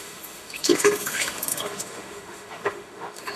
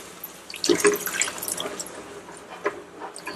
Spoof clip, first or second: first